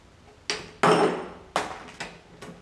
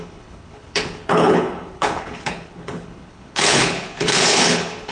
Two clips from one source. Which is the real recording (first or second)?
first